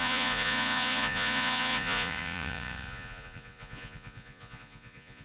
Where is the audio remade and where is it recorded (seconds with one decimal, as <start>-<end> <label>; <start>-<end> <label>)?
0.0-5.2 remade